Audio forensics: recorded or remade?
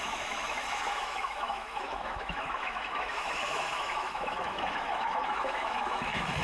remade